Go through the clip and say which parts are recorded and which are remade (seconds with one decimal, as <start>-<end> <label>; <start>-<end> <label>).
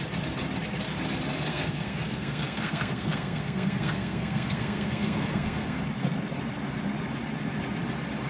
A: 0.0-1.5 recorded; 1.5-5.8 remade; 5.8-8.3 recorded